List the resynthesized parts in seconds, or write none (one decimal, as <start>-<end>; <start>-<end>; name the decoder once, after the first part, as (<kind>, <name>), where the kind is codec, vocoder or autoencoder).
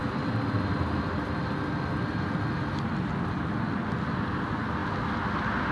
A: none